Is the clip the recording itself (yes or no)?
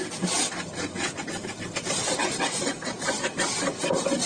yes